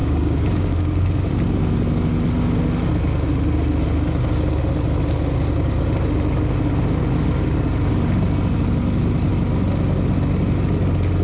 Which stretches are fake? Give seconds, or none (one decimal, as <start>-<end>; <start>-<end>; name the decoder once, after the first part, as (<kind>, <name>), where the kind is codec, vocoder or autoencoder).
0.0-1.3 (codec, DAC)